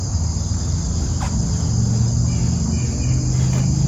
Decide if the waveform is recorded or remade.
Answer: recorded